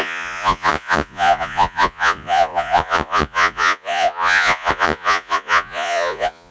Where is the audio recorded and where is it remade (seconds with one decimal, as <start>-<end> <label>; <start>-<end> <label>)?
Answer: 0.0-6.5 remade